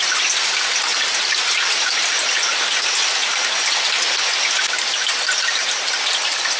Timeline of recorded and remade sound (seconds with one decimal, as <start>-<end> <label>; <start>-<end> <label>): 0.0-6.6 recorded